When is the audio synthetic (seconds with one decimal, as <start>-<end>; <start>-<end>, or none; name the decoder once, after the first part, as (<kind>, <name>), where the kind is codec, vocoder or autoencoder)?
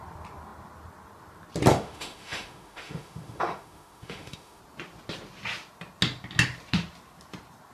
1.7-4.6 (autoencoder, DAC-VAE)